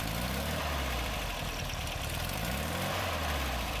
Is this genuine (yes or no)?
no